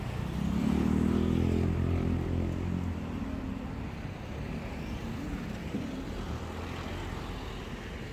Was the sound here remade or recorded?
recorded